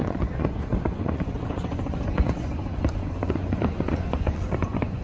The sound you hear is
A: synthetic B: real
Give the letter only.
A